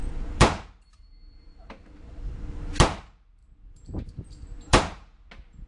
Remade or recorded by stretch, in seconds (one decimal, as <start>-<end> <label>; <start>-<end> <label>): 0.0-2.6 remade; 2.6-3.4 recorded; 3.4-5.3 remade; 5.3-5.7 recorded